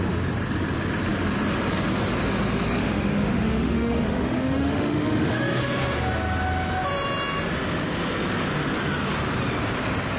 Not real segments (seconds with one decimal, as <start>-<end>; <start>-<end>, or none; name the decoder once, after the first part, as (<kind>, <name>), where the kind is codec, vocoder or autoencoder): 2.8-5.6 (autoencoder, DAC-VAE)